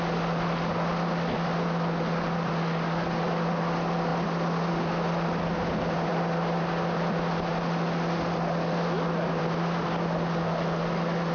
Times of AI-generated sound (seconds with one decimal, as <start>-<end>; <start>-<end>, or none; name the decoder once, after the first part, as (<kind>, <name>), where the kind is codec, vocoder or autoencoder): none